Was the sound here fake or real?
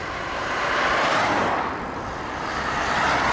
fake